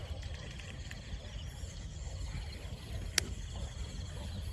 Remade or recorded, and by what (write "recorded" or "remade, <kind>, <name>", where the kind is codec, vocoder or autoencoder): recorded